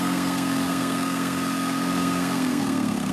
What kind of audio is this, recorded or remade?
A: remade